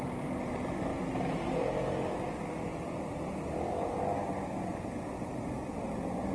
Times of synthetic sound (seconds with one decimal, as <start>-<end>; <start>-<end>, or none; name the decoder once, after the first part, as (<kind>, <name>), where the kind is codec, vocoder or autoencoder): none